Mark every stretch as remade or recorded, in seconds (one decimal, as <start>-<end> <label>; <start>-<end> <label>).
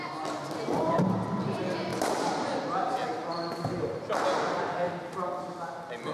0.0-6.1 recorded